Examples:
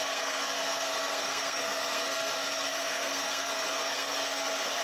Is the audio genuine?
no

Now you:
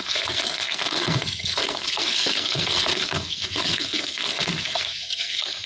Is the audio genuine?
no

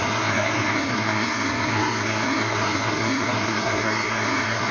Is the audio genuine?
no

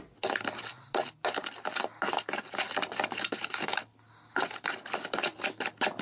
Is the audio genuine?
yes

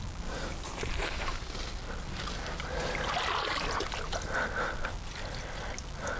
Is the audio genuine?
yes